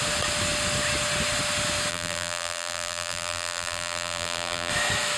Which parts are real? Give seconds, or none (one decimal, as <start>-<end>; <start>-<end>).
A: 0.0-1.9; 4.7-5.2